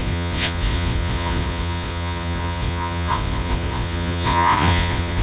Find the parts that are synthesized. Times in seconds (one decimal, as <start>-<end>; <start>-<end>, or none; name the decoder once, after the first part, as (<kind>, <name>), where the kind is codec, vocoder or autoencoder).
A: 0.0-5.2 (vocoder, Vocos)